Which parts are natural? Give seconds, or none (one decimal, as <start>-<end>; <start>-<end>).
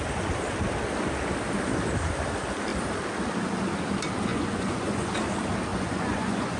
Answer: 0.0-4.3; 5.1-5.7